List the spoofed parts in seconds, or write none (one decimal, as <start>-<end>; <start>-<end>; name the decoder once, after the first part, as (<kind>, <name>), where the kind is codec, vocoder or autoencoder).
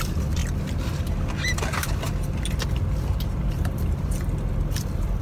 0.0-0.4 (vocoder, BigVGAN v2); 3.5-5.2